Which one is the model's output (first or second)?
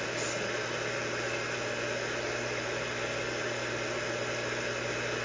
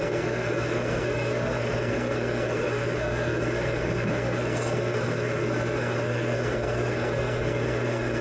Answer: second